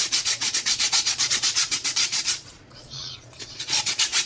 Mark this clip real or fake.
fake